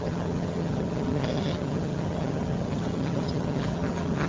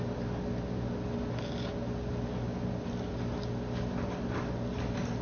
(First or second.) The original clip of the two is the second